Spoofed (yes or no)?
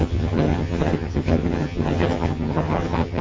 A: yes